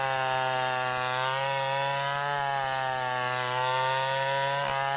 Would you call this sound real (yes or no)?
yes